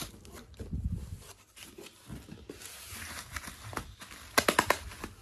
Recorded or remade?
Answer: recorded